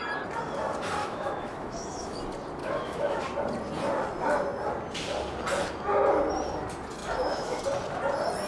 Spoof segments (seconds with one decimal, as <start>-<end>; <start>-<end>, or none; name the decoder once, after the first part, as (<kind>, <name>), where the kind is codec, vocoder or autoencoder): 1.0-2.2 (autoencoder, DAC-VAE); 2.6-3.2; 7.0-7.6